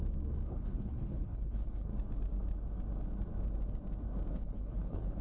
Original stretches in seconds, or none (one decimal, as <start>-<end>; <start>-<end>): 0.0-0.5; 1.9-4.3